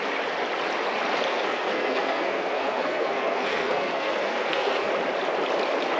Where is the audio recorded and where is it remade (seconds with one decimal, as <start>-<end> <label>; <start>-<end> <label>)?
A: 0.0-1.3 recorded; 1.3-4.9 remade; 4.9-6.0 recorded